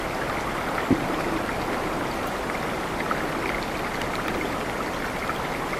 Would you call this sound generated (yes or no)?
no